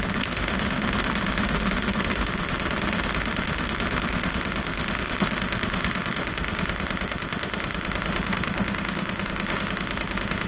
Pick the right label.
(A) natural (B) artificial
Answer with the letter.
B